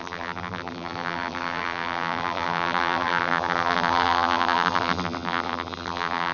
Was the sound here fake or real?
fake